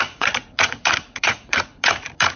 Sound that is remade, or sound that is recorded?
remade